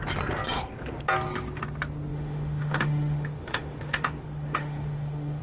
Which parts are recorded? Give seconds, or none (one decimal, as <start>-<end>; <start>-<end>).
0.0-2.1